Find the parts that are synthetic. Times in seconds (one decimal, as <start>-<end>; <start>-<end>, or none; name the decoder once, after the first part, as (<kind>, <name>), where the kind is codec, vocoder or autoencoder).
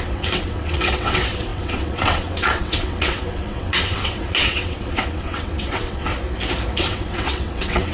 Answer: 0.0-6.1 (vocoder, WaveNeXt); 6.8-7.9